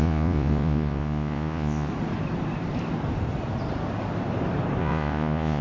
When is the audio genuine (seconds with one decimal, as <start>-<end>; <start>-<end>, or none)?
1.9-4.8